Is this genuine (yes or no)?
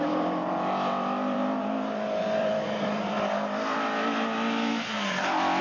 no